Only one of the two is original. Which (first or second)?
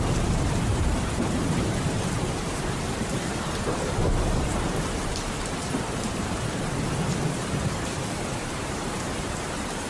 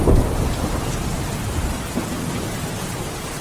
second